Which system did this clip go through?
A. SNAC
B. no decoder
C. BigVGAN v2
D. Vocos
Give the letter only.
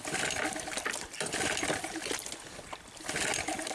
B